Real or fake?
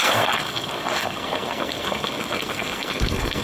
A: fake